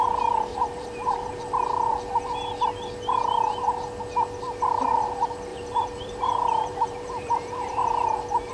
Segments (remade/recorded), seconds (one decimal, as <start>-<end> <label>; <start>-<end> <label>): 0.0-0.5 recorded; 0.5-1.4 remade; 1.4-5.5 recorded; 5.5-8.5 remade